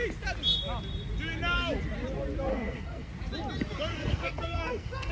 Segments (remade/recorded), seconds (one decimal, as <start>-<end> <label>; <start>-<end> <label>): 0.0-2.5 recorded; 2.5-3.1 remade; 3.1-3.9 recorded; 3.9-5.1 remade